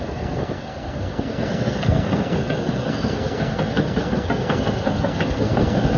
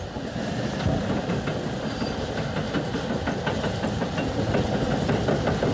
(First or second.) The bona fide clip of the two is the second